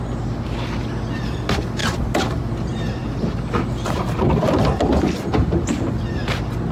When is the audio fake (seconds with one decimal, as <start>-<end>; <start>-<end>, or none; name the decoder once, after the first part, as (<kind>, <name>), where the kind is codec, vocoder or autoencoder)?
none